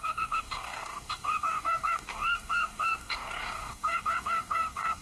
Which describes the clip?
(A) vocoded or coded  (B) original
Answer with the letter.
A